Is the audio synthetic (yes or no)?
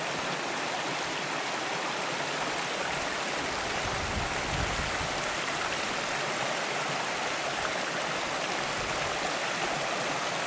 no